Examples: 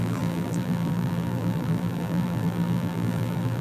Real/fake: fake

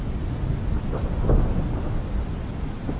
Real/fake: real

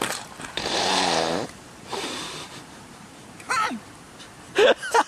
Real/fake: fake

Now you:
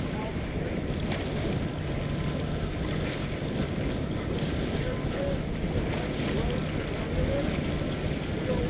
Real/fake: real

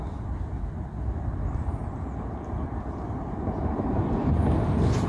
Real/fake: real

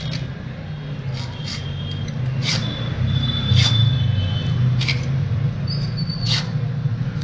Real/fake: real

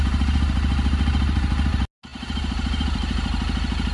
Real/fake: real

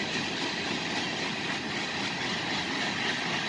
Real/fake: real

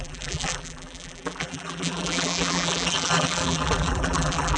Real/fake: fake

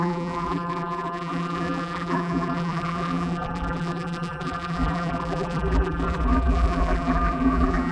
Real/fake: fake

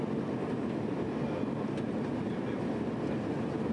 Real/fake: real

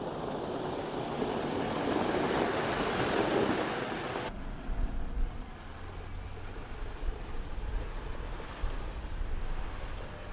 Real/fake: real